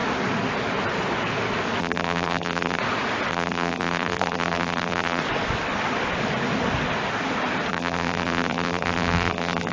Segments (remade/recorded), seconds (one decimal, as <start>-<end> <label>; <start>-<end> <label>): 0.0-1.8 recorded; 1.8-2.8 remade; 2.8-3.3 recorded; 3.3-5.2 remade; 5.2-7.7 recorded; 7.7-9.7 remade